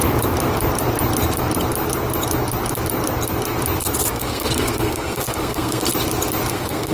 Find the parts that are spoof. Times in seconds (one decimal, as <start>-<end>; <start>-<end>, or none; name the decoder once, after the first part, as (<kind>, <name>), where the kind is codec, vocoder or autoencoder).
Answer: 4.1-5.8 (codec, SNAC); 6.5-6.9